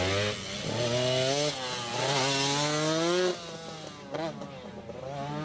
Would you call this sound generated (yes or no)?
no